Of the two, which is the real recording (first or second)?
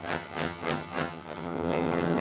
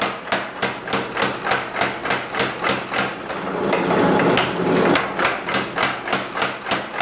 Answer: second